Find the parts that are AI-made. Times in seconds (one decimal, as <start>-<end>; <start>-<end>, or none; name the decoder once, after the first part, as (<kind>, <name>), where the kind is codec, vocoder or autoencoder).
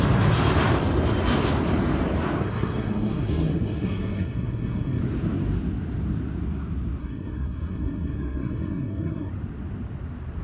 2.4-5.0 (codec, SNAC); 7.0-9.3